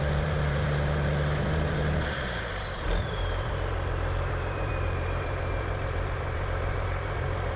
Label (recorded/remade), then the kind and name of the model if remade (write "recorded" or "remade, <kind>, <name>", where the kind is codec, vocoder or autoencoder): remade, vocoder, BigVGAN v2